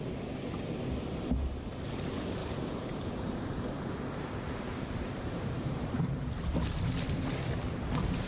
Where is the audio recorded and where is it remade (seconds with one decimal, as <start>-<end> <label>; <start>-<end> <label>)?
0.0-2.4 recorded; 2.4-6.0 remade; 6.0-8.3 recorded